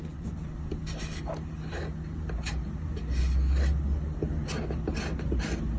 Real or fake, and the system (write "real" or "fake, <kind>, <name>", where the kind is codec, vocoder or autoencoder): real